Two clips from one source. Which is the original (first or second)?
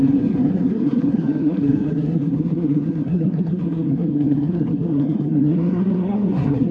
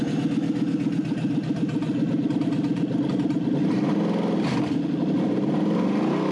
second